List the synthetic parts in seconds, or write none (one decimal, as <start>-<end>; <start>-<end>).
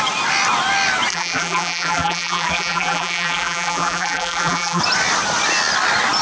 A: 1.1-4.8